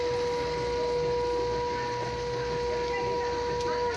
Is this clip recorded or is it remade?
recorded